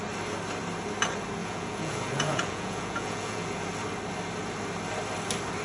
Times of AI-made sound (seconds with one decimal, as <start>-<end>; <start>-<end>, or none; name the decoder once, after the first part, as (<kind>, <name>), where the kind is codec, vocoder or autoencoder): 1.4-3.7 (vocoder, Vocos)